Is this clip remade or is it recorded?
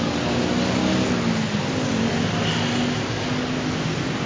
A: recorded